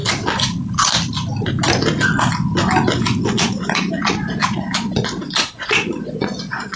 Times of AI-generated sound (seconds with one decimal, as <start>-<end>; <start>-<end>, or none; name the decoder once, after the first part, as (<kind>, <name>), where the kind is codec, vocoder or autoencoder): 3.3-6.8 (vocoder, Vocos)